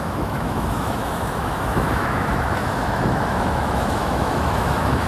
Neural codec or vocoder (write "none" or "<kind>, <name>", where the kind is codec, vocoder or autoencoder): autoencoder, DAC-VAE